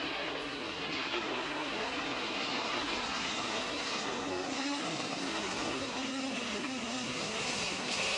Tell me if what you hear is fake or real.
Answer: fake